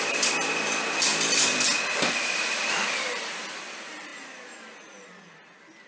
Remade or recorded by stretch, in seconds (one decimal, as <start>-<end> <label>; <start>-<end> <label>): 0.0-5.9 remade

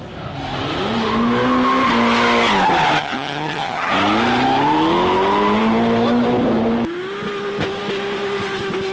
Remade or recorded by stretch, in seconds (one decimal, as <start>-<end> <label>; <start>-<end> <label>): 0.0-3.0 recorded; 3.0-3.9 remade; 3.9-8.9 recorded

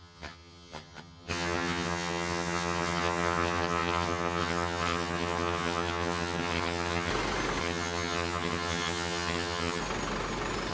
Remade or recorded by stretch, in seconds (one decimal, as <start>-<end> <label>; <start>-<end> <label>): 0.0-7.1 remade; 7.1-7.6 recorded; 7.6-9.8 remade; 9.8-10.7 recorded

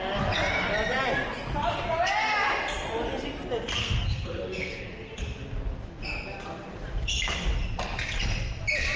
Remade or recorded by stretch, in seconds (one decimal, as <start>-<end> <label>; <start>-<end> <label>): 0.0-3.8 recorded; 3.8-5.1 remade; 5.1-9.0 recorded

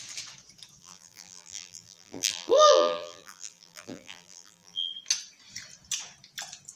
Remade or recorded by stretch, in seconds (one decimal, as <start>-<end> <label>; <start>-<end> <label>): 0.0-0.8 recorded; 0.8-4.9 remade; 4.9-6.8 recorded

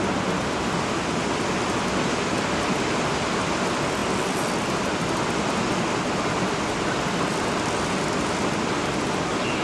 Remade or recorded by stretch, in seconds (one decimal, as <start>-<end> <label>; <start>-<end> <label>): 0.0-9.6 recorded

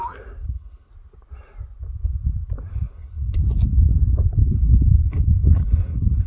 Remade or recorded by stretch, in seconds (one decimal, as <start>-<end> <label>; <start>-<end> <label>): 0.0-0.4 recorded; 0.4-0.9 remade; 0.9-2.7 recorded; 2.7-3.4 remade; 3.4-4.4 recorded; 4.4-6.3 remade

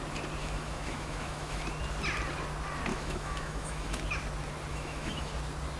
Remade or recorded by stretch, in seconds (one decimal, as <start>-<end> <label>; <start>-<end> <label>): 0.0-0.4 recorded; 0.4-1.6 remade; 1.6-2.9 recorded; 2.9-4.0 remade; 4.0-4.7 recorded; 4.7-5.3 remade; 5.3-5.8 recorded